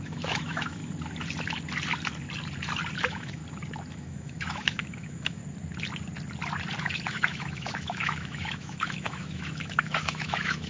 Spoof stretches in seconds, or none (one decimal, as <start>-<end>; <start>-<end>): 0.0-0.8; 3.0-3.4; 3.9-5.4; 6.8-10.7